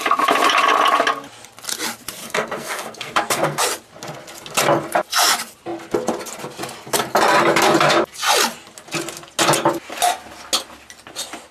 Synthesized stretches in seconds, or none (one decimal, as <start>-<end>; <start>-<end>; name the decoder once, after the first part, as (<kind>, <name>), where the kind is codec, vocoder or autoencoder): 2.2-3.6 (codec, SNAC)